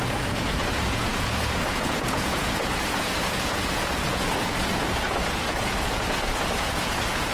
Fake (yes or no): yes